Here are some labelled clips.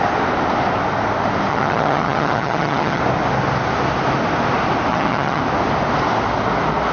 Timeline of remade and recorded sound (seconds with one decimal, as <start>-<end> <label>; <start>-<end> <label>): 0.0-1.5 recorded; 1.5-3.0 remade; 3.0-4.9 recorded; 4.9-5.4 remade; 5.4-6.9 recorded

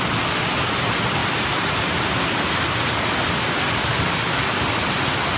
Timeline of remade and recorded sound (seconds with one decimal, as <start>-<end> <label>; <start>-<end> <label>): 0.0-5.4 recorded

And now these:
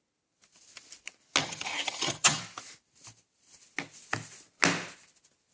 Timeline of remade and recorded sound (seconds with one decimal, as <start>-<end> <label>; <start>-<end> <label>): 0.0-1.4 recorded; 1.4-2.4 remade; 2.4-5.5 recorded

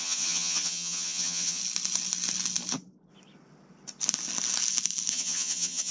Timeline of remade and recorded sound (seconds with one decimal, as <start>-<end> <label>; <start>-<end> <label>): 0.0-1.6 remade; 1.6-5.1 recorded; 5.1-5.9 remade

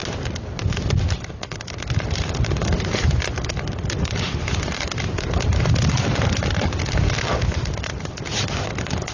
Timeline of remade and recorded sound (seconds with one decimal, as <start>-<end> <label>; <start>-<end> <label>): 0.0-9.1 recorded

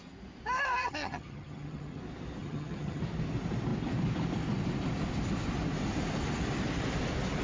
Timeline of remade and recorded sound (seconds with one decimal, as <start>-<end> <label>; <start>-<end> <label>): 0.0-0.8 recorded; 0.8-2.0 remade; 2.0-2.4 recorded; 2.4-3.0 remade; 3.0-7.4 recorded